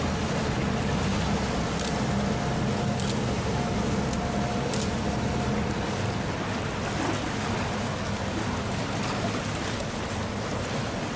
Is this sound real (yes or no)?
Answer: yes